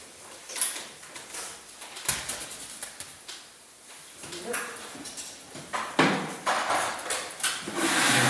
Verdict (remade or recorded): recorded